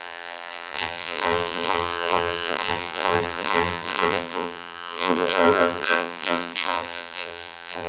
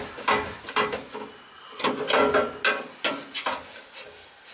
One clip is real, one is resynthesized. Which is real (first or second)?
second